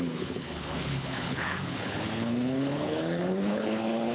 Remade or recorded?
remade